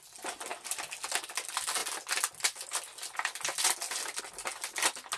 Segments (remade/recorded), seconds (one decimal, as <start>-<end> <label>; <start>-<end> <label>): 0.0-5.2 recorded